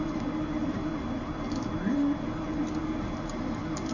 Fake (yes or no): no